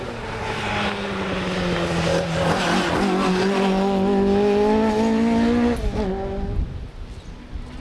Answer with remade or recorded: recorded